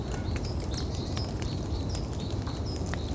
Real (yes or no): yes